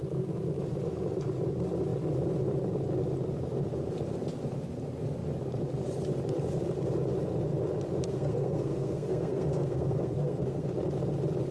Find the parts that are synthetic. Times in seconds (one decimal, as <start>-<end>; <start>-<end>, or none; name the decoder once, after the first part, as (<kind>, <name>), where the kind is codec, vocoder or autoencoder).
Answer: 8.1-10.7 (codec, SNAC)